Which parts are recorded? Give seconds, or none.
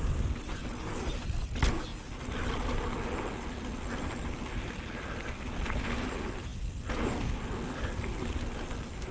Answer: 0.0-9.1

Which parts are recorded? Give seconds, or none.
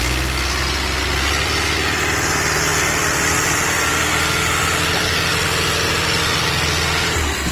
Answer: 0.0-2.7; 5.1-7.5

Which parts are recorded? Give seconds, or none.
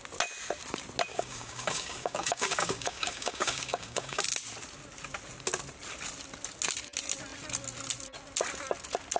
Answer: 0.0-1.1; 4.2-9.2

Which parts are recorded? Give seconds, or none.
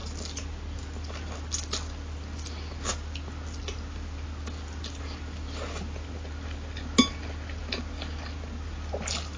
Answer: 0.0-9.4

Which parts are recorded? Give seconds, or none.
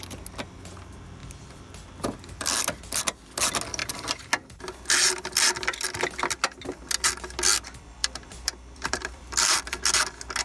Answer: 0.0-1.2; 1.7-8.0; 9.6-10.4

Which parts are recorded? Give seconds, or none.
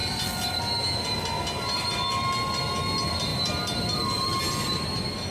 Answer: 0.6-3.3; 4.4-5.3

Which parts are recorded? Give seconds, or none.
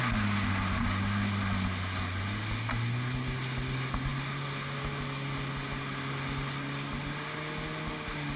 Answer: 0.0-8.4